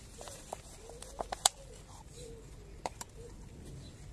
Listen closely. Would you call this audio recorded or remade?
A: remade